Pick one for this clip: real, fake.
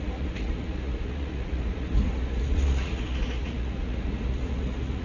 fake